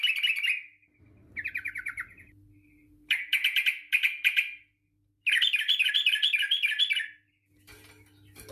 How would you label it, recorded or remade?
recorded